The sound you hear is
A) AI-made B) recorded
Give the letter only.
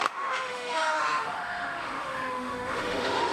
A